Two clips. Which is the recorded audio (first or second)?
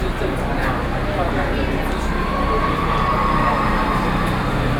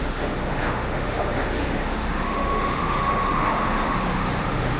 first